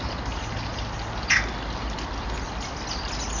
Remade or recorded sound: recorded